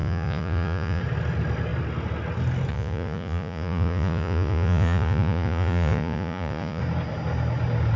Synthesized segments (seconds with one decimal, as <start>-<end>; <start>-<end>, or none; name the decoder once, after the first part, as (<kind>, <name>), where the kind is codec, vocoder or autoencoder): 0.0-1.0 (vocoder, Vocos); 2.7-6.8